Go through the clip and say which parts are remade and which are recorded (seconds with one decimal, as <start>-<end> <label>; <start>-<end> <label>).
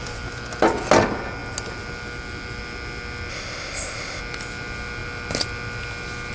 0.0-3.3 recorded; 3.3-4.2 remade; 4.2-6.3 recorded